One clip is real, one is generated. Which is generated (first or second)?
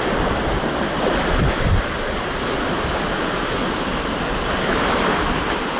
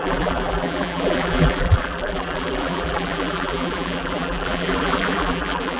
second